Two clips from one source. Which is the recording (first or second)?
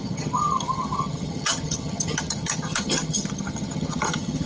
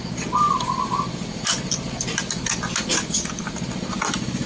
second